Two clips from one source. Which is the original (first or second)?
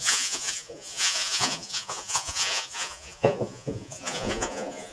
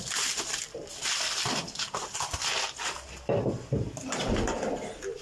second